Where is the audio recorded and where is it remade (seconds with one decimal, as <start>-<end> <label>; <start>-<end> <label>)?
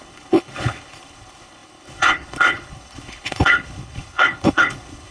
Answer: 0.0-5.1 remade